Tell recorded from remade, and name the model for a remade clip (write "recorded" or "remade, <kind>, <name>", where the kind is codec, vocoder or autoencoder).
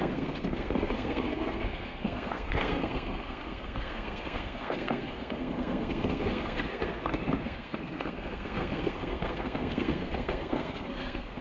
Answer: remade, codec, SNAC